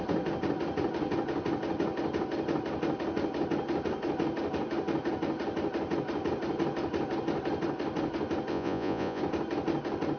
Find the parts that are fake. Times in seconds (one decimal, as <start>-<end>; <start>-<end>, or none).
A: 8.5-9.2